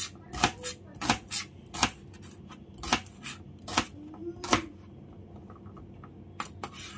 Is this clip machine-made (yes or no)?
no